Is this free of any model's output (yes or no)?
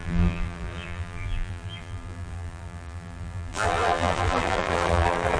no